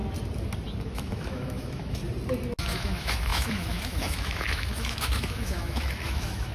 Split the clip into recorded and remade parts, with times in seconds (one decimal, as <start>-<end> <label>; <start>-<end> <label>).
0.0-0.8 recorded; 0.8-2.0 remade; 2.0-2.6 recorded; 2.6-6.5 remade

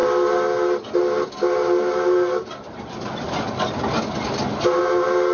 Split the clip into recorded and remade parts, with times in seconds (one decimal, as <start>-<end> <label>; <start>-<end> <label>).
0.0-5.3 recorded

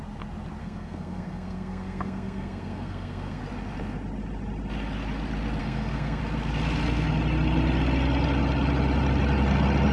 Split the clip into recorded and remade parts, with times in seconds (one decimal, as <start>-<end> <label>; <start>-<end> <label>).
0.0-0.6 recorded; 0.6-3.4 remade; 3.4-5.6 recorded; 5.6-6.2 remade; 6.2-9.9 recorded

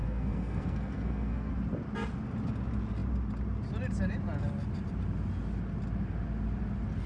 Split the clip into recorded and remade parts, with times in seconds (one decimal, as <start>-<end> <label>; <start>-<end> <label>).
0.0-1.5 remade; 1.5-7.1 recorded

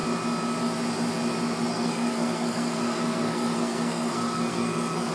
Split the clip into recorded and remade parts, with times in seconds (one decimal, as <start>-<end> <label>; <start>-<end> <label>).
0.0-1.7 recorded; 1.7-5.1 remade